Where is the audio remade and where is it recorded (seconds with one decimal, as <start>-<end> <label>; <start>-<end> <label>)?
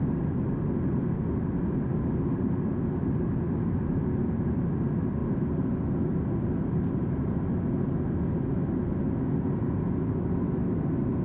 0.0-11.2 recorded